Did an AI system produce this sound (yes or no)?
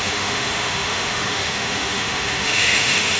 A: yes